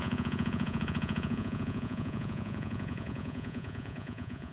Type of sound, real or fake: fake